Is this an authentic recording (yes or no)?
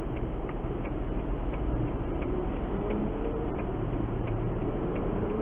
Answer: no